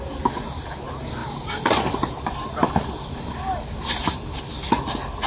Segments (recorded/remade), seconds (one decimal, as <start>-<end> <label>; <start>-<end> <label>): 0.0-1.2 recorded; 1.2-4.4 remade; 4.4-5.3 recorded